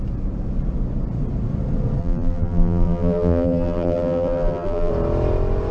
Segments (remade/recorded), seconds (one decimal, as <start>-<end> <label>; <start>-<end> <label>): 0.0-2.0 recorded; 2.0-4.9 remade; 4.9-5.7 recorded